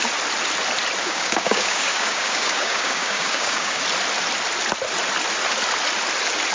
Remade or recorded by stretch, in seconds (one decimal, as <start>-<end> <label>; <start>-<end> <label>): 0.0-1.0 recorded; 1.0-3.8 remade; 3.8-6.5 recorded